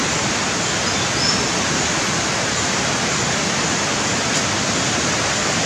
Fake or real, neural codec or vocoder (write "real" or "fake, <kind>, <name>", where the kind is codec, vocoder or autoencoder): real